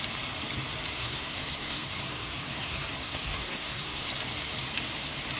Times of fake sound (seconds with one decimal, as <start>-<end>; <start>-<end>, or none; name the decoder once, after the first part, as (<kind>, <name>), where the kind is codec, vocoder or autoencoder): 0.9-4.1 (codec, SNAC)